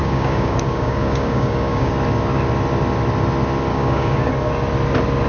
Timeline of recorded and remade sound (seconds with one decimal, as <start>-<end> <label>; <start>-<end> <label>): 0.0-1.9 remade; 1.9-3.7 recorded; 3.7-4.3 remade; 4.3-5.3 recorded